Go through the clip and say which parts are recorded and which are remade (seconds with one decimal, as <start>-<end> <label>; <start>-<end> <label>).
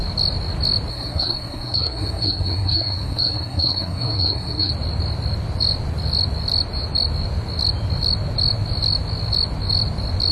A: 0.0-0.9 recorded; 0.9-4.7 remade; 4.7-10.3 recorded